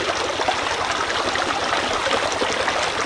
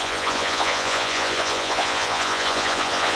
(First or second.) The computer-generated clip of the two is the second